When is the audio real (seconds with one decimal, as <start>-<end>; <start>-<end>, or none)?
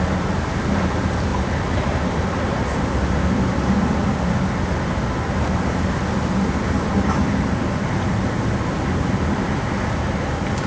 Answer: 0.0-1.3; 3.2-10.7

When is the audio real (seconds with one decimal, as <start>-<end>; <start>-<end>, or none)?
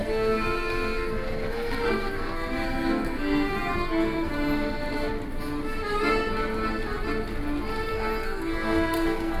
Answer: 4.3-7.9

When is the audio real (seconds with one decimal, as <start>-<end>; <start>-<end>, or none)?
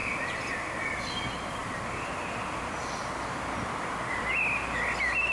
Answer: 0.0-5.3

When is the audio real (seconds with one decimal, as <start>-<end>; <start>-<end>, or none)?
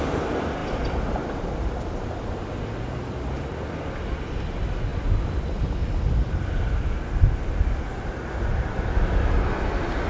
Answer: 0.0-10.1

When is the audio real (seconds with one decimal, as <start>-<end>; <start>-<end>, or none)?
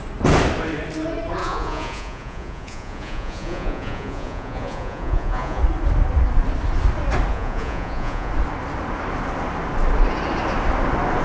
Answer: 0.0-1.4; 5.6-7.3; 8.3-11.2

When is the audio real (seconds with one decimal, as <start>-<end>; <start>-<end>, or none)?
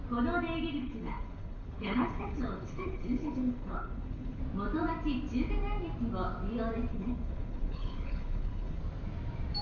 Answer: 0.0-0.8; 4.4-6.9; 8.8-9.6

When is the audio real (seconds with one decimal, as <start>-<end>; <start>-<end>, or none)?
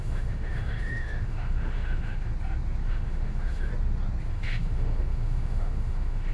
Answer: 2.3-2.9; 3.7-4.3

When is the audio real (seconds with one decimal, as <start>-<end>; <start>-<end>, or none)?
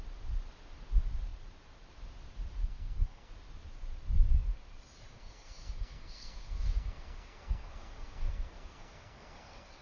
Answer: 0.0-2.6; 3.3-5.1